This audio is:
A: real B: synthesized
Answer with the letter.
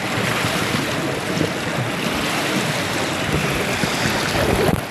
A